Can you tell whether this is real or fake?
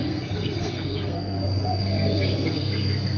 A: fake